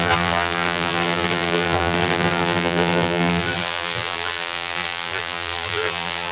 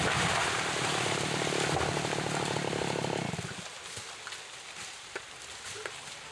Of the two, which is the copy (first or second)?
first